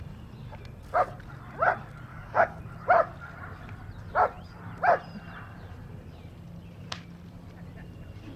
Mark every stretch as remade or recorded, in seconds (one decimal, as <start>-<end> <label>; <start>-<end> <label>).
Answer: 0.0-2.1 recorded; 2.1-2.6 remade; 2.6-8.4 recorded